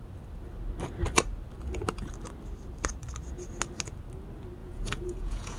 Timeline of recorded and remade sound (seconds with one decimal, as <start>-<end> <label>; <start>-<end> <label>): 0.0-4.6 recorded; 4.6-5.6 remade